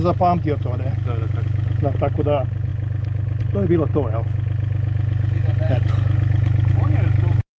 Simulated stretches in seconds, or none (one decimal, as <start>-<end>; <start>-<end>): none